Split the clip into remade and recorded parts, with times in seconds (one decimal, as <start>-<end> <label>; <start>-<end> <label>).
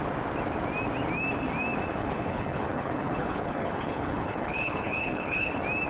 0.0-2.0 recorded; 2.0-5.5 remade; 5.5-5.9 recorded